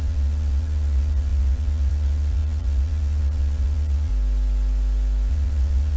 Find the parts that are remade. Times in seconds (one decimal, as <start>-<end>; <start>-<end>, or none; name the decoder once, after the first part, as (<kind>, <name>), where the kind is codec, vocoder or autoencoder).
0.0-4.1 (vocoder, Vocos); 5.3-6.0